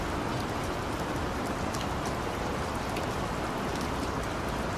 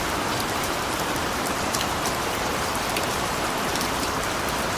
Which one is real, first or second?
first